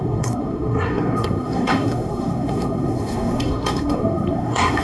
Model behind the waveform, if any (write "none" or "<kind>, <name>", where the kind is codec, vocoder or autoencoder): codec, SNAC